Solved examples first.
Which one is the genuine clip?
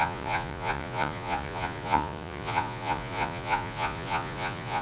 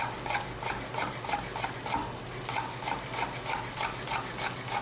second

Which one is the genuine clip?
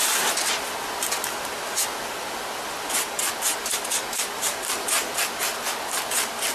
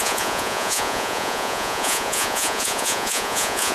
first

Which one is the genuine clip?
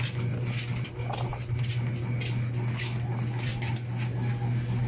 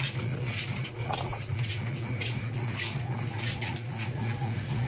first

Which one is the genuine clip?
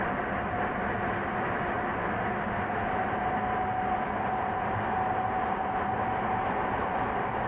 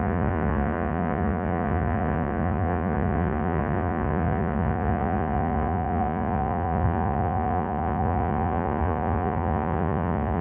first